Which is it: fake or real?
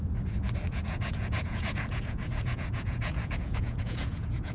fake